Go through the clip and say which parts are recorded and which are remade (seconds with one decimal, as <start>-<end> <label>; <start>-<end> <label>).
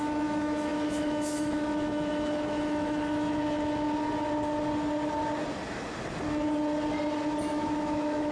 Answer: 0.0-3.4 remade; 3.4-7.4 recorded; 7.4-8.3 remade